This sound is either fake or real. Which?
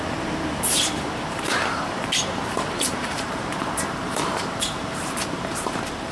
fake